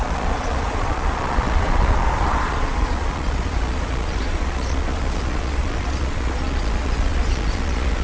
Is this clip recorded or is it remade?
remade